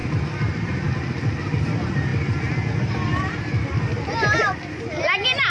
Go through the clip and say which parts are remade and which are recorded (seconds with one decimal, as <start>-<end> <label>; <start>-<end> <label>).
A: 0.0-5.5 recorded